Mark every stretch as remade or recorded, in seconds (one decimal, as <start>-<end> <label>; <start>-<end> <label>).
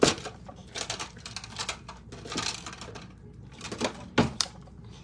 0.0-5.0 recorded